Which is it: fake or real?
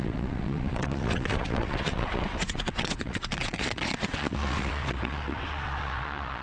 fake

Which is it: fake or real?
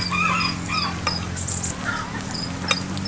real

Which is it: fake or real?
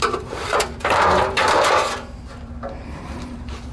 fake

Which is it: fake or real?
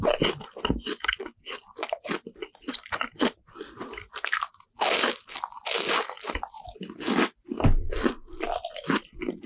real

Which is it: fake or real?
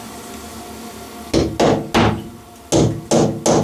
real